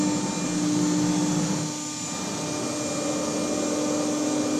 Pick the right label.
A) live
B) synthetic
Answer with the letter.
A